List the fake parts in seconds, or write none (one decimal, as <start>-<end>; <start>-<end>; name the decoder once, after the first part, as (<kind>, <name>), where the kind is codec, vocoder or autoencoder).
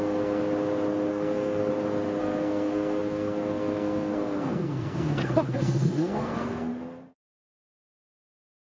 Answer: 0.0-0.4 (codec, SNAC); 1.1-1.7; 2.2-6.7; 7.6-8.6